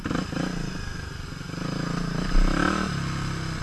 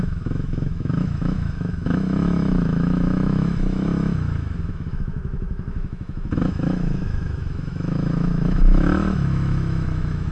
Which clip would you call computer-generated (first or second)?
second